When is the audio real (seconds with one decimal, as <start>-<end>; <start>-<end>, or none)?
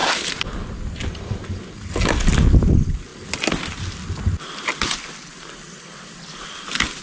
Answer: 0.0-7.0